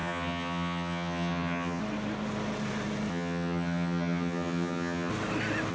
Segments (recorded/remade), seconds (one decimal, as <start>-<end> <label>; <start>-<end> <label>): 0.0-1.8 remade; 1.8-3.1 recorded; 3.1-5.1 remade; 5.1-5.7 recorded